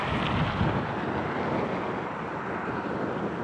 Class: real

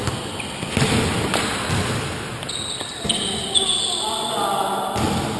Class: real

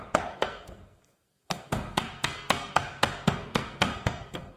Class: fake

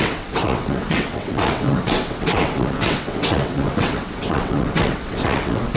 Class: fake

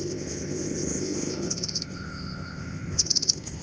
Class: fake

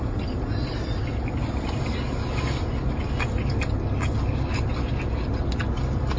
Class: real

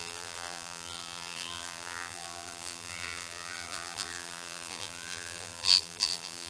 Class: fake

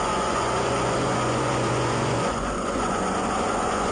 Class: fake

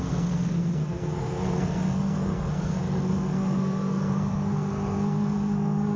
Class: fake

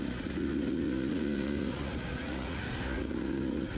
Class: fake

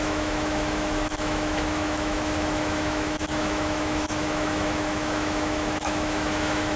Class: fake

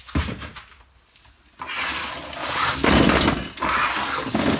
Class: real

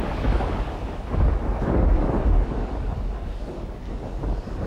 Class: fake